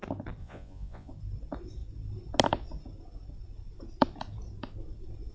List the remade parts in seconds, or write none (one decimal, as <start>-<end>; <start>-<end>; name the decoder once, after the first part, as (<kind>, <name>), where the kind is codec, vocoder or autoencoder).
0.4-1.1 (vocoder, Vocos)